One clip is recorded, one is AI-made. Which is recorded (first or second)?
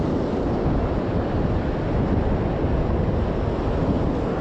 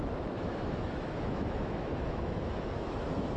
first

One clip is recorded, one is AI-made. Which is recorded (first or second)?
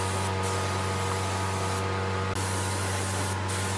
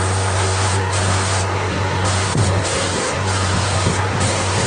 first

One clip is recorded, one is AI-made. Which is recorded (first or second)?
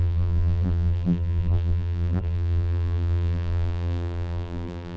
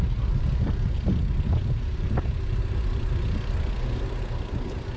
second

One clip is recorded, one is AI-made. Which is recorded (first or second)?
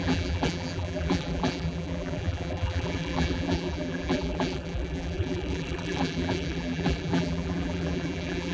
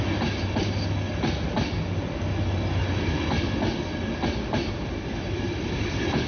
second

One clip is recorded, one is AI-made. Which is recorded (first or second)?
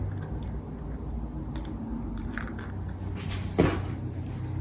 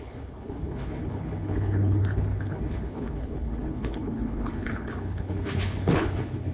first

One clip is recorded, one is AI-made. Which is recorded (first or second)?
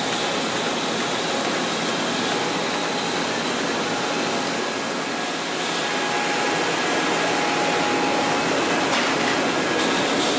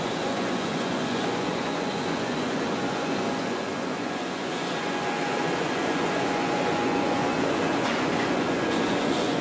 first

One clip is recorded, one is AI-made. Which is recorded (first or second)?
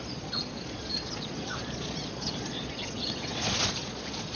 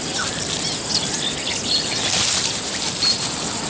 second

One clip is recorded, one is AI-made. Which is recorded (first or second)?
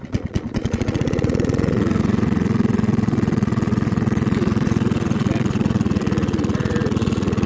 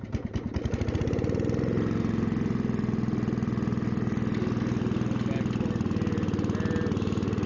second